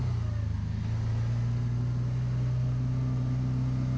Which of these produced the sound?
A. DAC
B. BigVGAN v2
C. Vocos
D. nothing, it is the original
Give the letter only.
D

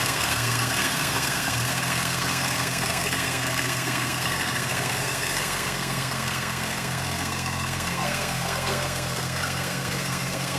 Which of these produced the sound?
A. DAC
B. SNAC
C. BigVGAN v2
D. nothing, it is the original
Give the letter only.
B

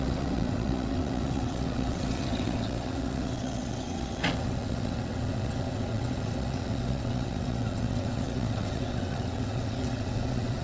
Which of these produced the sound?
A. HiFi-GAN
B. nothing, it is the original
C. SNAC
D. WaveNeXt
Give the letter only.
D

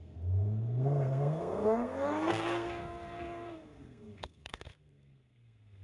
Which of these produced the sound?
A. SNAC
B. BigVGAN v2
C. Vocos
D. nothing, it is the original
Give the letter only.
A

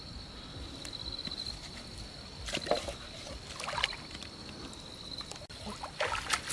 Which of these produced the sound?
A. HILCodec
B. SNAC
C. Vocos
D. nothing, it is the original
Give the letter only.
D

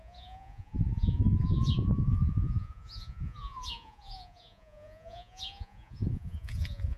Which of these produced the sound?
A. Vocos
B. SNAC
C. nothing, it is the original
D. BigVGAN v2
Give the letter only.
A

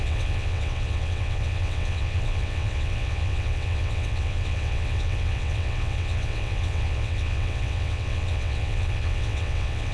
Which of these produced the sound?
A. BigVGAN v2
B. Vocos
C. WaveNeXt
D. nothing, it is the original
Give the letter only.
C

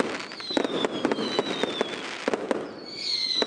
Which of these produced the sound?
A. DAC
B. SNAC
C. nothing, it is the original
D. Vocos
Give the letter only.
C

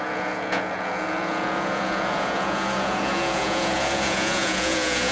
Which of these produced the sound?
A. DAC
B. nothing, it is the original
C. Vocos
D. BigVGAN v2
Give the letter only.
C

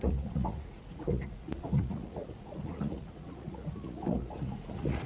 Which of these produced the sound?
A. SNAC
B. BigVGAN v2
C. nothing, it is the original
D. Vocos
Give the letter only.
D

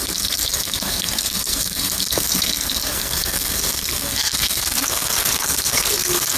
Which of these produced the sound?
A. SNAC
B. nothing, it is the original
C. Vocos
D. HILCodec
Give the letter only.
A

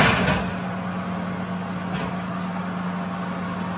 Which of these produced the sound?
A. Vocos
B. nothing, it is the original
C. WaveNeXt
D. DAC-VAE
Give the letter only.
B